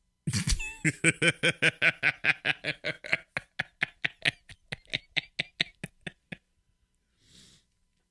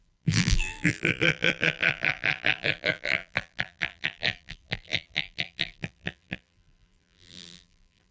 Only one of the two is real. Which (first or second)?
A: first